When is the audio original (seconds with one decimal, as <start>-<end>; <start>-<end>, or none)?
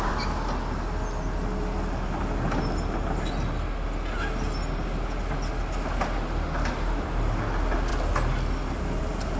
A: 0.0-9.4